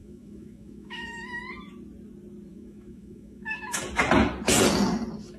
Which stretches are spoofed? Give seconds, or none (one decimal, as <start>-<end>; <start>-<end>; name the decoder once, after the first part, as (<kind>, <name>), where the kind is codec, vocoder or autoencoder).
0.0-1.4 (autoencoder, DAC-VAE); 2.5-3.8